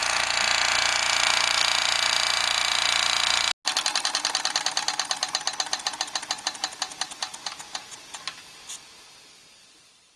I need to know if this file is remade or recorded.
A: recorded